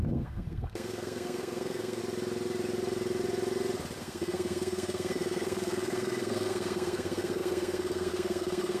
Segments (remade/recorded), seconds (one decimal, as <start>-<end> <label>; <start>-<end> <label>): 0.0-2.0 remade; 2.0-4.0 recorded; 4.0-8.8 remade